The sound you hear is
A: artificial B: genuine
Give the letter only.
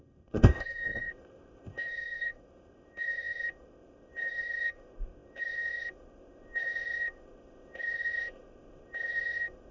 A